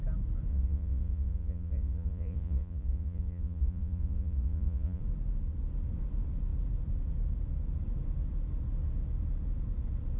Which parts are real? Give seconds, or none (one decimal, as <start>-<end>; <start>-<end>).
0.0-0.5; 5.0-10.2